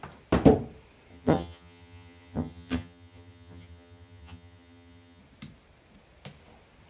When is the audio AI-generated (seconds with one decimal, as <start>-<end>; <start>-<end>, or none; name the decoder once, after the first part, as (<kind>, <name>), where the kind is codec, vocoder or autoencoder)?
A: 1.1-5.2 (vocoder, HiFi-GAN)